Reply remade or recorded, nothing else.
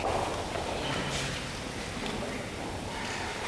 recorded